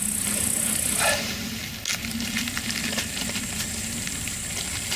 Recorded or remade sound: recorded